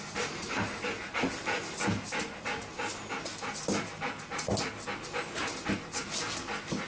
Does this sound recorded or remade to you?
recorded